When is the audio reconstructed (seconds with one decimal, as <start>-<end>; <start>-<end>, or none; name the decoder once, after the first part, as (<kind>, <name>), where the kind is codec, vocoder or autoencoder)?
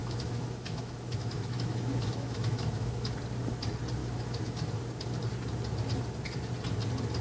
0.0-3.1 (autoencoder, DAC-VAE); 4.0-4.8